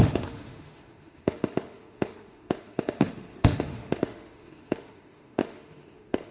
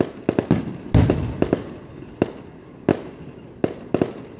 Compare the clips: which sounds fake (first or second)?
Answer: first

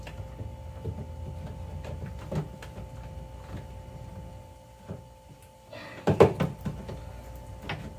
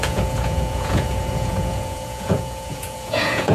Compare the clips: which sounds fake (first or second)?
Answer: second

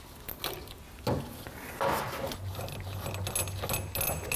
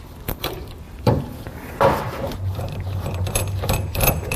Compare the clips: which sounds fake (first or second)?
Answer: second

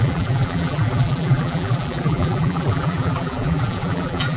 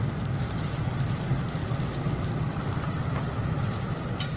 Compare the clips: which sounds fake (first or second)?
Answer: first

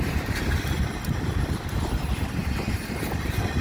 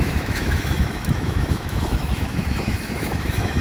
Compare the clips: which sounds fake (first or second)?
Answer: second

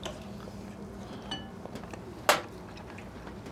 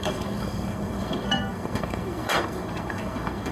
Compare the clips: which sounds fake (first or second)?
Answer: second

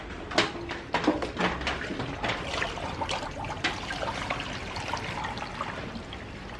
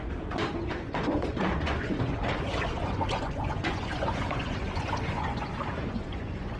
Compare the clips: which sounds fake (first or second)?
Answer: second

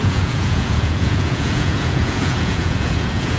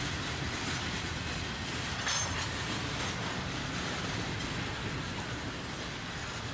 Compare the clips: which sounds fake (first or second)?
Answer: first